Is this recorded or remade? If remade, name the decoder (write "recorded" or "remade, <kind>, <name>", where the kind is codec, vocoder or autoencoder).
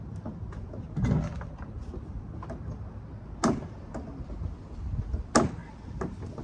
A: recorded